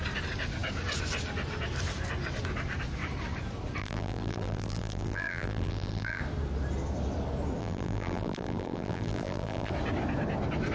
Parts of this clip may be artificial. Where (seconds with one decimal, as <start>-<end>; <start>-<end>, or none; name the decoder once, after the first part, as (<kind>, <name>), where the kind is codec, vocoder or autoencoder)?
3.8-6.2 (vocoder, BigVGAN v2); 7.6-9.7